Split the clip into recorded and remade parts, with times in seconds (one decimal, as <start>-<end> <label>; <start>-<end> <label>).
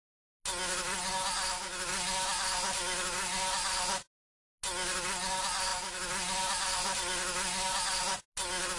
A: 0.0-8.8 recorded